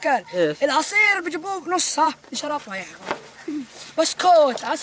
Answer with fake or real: fake